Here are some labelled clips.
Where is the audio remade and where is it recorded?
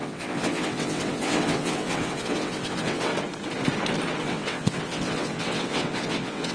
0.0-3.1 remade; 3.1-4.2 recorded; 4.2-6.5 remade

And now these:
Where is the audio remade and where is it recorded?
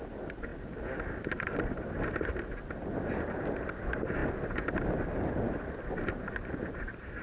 0.0-7.2 recorded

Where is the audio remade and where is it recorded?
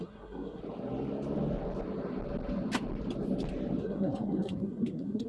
0.0-0.6 remade; 0.6-3.8 recorded; 3.8-5.3 remade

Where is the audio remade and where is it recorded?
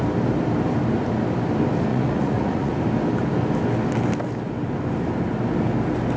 0.0-1.9 recorded; 1.9-2.7 remade; 2.7-6.2 recorded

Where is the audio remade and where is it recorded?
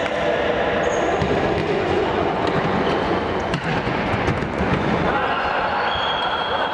0.0-1.6 recorded; 1.6-5.5 remade; 5.5-6.7 recorded